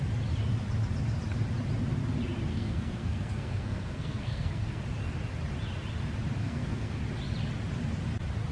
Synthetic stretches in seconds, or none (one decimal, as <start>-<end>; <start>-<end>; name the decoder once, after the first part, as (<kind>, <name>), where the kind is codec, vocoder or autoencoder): 2.5-4.8 (codec, SNAC); 6.4-7.0